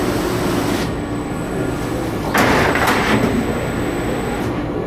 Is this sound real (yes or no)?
yes